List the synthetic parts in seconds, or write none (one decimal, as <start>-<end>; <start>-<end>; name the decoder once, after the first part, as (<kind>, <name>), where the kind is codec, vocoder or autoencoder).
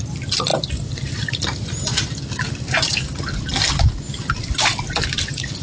none